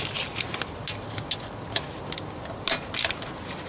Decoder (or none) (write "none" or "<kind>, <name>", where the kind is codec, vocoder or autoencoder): none